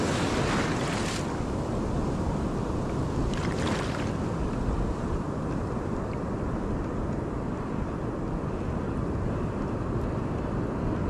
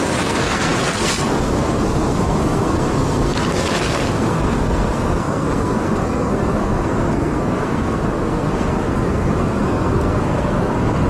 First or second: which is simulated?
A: second